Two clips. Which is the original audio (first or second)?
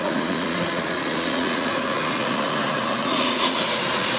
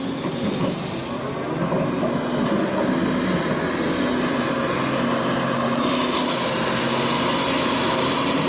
second